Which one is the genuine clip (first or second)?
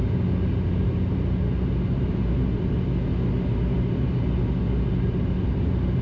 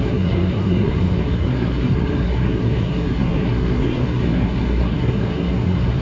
first